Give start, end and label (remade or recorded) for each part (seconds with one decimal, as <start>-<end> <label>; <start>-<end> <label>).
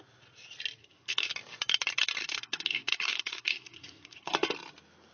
0.0-0.8 recorded; 0.8-1.3 remade; 1.3-2.2 recorded; 2.2-4.3 remade; 4.3-5.1 recorded